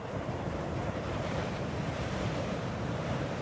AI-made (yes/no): yes